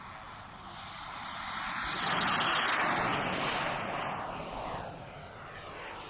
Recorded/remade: recorded